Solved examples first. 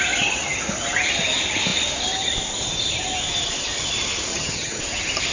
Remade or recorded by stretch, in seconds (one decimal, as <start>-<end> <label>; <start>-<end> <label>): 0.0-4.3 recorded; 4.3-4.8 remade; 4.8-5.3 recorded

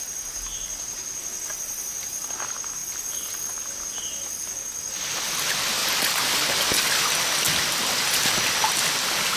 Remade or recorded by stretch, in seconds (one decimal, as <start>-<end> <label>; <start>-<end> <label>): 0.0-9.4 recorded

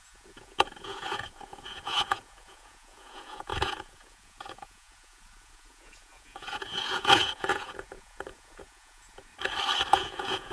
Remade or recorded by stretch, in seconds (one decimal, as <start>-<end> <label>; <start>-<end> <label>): 0.0-9.3 remade; 9.3-9.9 recorded; 9.9-10.5 remade

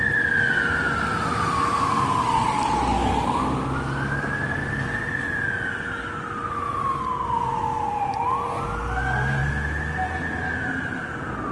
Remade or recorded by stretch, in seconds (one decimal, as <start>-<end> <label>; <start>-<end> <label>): 0.0-11.5 recorded

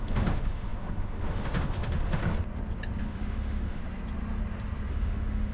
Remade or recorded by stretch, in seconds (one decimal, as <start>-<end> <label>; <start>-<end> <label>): 0.0-2.2 remade; 2.2-3.0 recorded; 3.0-3.8 remade; 3.8-4.9 recorded; 4.9-5.5 remade

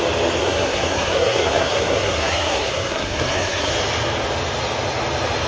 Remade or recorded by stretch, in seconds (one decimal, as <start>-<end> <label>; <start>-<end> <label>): 0.0-0.4 recorded; 0.4-3.7 remade; 3.7-5.5 recorded

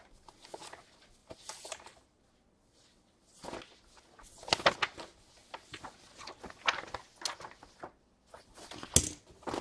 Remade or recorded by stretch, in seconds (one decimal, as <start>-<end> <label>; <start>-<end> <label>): 0.0-1.2 recorded; 1.2-2.2 remade; 2.2-9.6 recorded

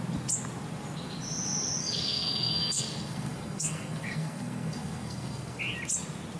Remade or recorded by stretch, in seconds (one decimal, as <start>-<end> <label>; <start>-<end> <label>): 0.0-1.8 recorded; 1.8-5.6 remade; 5.6-6.4 recorded